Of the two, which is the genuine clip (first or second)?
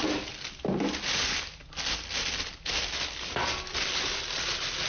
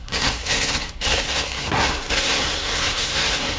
first